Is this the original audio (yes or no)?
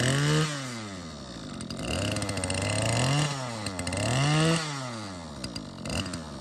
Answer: yes